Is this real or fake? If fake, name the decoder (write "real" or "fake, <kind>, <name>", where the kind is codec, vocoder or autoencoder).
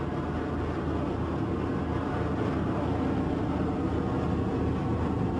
real